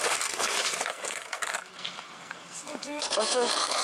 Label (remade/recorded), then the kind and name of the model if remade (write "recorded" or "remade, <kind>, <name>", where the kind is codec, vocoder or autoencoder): remade, codec, SNAC